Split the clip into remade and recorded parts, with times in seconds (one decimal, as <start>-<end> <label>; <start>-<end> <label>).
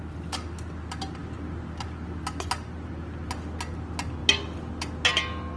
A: 0.0-5.6 recorded